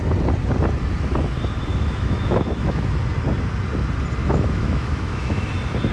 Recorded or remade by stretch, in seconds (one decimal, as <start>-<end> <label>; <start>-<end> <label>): 0.0-1.7 recorded; 1.7-2.9 remade; 2.9-4.2 recorded; 4.2-5.5 remade; 5.5-5.9 recorded